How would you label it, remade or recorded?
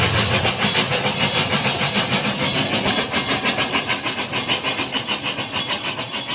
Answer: recorded